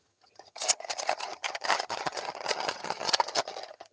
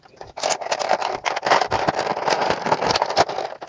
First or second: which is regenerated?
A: first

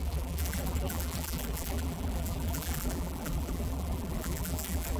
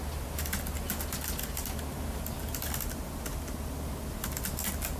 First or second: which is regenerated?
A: first